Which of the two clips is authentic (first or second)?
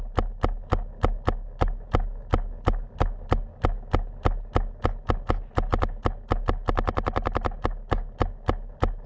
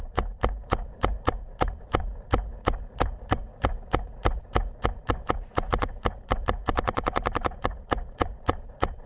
first